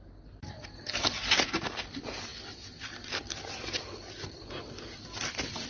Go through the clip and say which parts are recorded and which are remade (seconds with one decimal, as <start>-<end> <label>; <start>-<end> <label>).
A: 0.0-5.7 recorded